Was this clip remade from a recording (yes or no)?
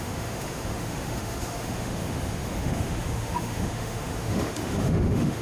yes